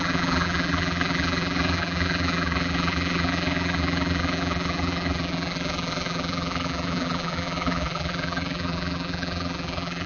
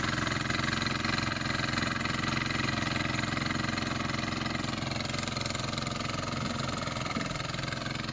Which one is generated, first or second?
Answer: first